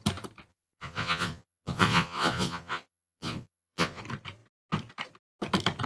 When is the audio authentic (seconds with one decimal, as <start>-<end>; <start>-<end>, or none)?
0.0-0.5; 4.0-5.9